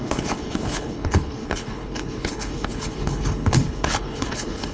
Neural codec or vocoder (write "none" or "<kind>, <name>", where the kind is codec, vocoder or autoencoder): codec, HILCodec